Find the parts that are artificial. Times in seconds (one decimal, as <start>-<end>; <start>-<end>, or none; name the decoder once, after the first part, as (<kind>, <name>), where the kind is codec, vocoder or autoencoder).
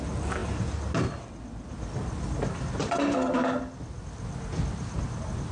none